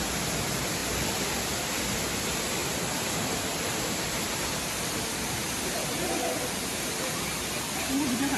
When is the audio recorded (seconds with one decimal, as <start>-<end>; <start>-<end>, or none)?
0.8-2.2